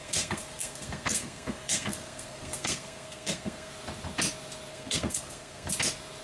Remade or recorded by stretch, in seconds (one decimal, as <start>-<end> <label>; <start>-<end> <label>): 0.0-3.7 remade; 3.7-4.7 recorded; 4.7-5.7 remade; 5.7-6.2 recorded